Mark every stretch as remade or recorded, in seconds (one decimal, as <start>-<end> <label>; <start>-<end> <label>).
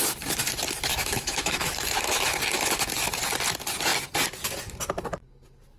0.0-0.9 recorded; 0.9-2.2 remade; 2.2-5.8 recorded